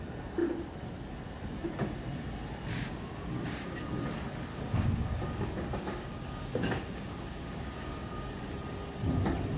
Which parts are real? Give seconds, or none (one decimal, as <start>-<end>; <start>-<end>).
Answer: 0.0-2.7; 3.9-4.5; 8.4-9.6